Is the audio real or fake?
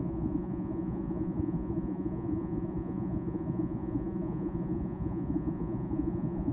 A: fake